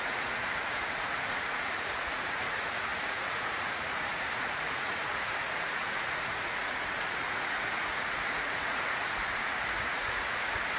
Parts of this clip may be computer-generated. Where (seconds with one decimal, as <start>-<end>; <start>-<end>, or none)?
0.0-10.8